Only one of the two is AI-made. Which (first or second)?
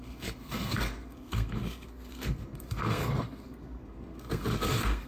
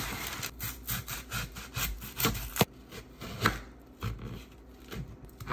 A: first